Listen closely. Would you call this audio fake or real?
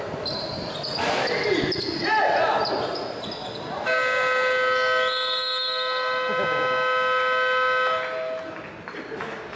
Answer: real